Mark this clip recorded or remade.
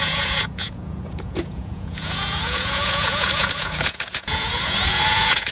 remade